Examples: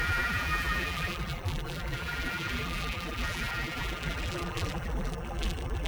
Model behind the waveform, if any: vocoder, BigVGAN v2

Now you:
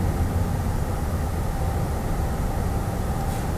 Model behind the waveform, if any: none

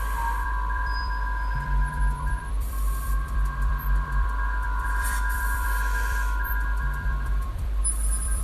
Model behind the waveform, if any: vocoder, BigVGAN v2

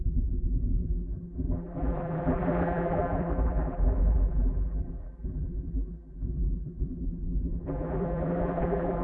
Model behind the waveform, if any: vocoder, BigVGAN v2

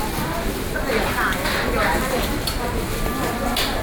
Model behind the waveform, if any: vocoder, BigVGAN v2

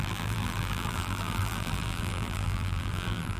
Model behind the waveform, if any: vocoder, BigVGAN v2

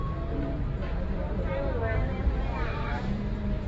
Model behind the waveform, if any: vocoder, BigVGAN v2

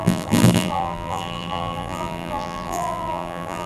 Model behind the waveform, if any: vocoder, BigVGAN v2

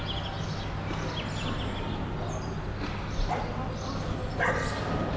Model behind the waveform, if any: none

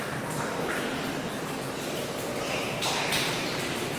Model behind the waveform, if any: vocoder, BigVGAN v2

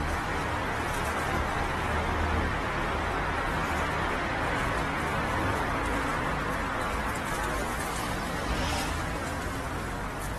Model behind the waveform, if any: none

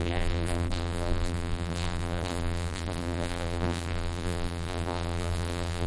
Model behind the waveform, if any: vocoder, BigVGAN v2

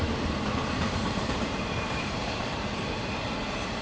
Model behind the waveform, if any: vocoder, BigVGAN v2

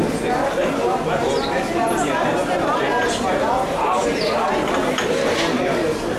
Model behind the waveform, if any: none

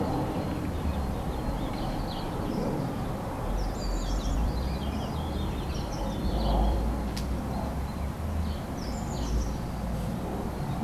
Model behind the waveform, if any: vocoder, BigVGAN v2